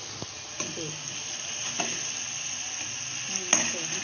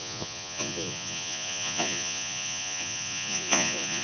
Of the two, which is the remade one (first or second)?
second